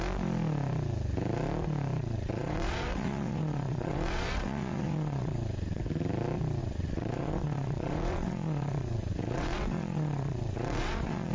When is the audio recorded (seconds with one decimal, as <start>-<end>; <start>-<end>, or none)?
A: 0.0-2.0; 5.8-6.6